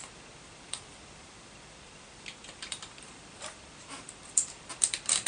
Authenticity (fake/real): fake